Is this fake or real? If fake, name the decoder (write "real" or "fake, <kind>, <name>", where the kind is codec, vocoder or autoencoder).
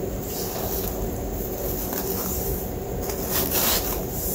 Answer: real